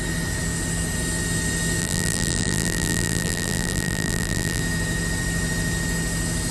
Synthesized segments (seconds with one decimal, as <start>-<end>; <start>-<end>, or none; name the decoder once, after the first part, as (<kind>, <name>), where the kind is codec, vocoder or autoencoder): 1.8-4.6 (vocoder, BigVGAN v2)